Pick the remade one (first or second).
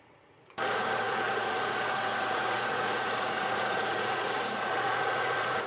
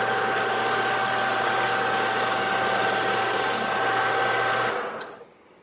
first